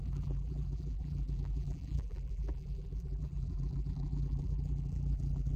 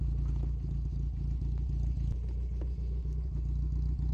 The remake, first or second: first